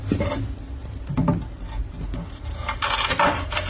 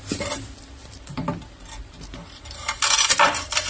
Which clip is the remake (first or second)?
second